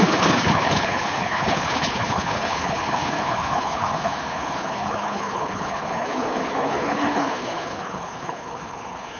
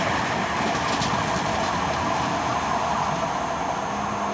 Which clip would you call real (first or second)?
second